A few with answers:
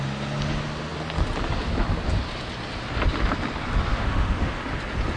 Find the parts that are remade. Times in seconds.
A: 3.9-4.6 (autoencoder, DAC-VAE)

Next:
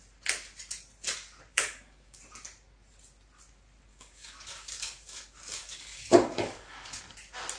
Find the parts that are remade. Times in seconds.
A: 1.5-2.2 (codec, DAC); 3.9-7.0

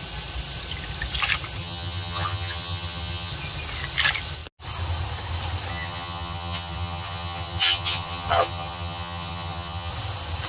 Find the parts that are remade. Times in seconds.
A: 1.6-3.3 (vocoder, HiFi-GAN); 5.7-9.9

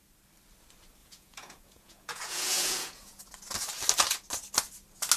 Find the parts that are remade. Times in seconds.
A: 1.0-3.2 (vocoder, Vocos)